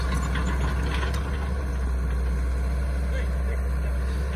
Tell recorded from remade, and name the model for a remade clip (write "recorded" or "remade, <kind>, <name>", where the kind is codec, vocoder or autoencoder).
recorded